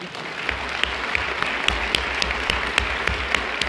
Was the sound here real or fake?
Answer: real